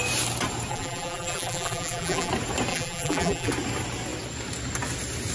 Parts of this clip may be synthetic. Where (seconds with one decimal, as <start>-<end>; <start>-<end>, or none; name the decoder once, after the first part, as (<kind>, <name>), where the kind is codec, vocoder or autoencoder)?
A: 0.7-2.3 (vocoder, BigVGAN v2); 2.7-3.5